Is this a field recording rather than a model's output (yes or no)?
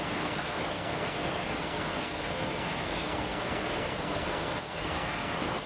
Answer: no